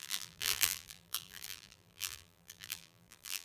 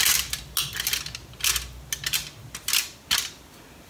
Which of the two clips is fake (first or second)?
first